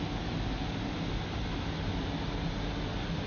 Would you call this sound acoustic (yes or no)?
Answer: yes